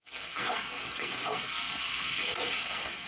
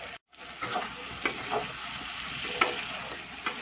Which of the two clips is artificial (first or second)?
first